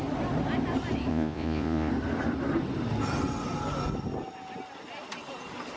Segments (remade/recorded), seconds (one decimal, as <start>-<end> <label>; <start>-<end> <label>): 0.0-1.1 recorded; 1.1-1.9 remade; 1.9-5.8 recorded